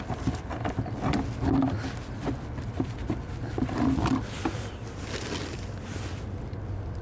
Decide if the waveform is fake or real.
real